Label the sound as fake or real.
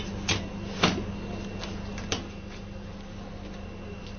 real